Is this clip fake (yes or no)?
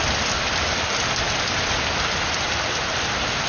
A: no